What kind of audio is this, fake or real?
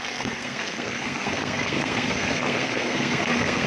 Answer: fake